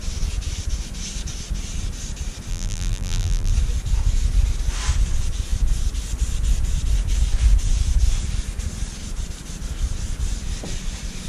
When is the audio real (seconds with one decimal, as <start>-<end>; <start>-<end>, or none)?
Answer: 0.0-2.5; 3.5-11.3